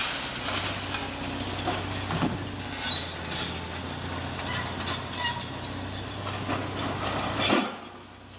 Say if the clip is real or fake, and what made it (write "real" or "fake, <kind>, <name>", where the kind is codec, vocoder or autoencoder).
real